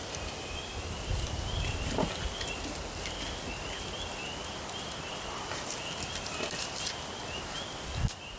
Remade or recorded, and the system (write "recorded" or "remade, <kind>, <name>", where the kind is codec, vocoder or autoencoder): recorded